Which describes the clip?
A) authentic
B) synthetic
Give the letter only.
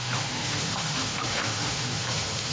B